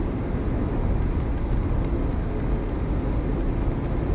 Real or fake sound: real